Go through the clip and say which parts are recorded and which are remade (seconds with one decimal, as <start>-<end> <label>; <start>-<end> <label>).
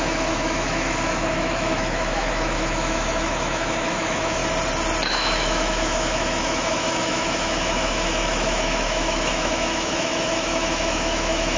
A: 0.0-4.4 remade; 4.4-5.1 recorded; 5.1-11.6 remade